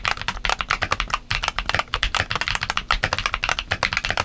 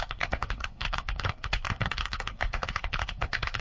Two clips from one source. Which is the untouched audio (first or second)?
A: first